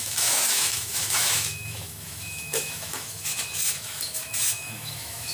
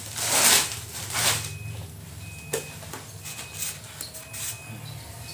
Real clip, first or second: second